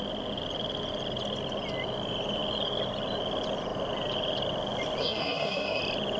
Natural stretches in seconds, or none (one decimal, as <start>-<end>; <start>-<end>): 0.0-5.0; 5.8-6.2